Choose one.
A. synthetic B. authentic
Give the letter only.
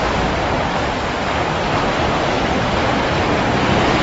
B